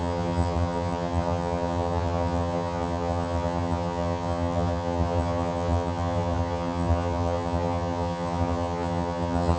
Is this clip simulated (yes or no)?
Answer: yes